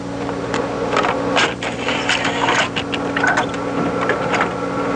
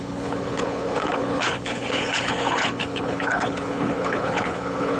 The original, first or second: first